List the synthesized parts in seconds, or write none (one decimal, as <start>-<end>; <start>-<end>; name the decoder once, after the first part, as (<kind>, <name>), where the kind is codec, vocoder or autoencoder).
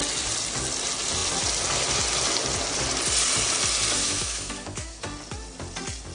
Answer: 4.0-5.0 (autoencoder, DAC-VAE)